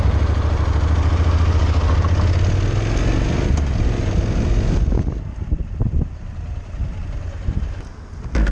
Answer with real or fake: real